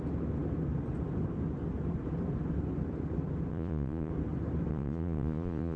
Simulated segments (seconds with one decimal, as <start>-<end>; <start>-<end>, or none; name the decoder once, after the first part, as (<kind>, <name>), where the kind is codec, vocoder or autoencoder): 3.5-4.1 (vocoder, Vocos); 4.7-5.8